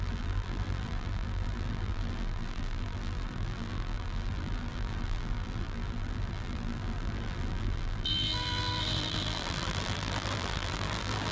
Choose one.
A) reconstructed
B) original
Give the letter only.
A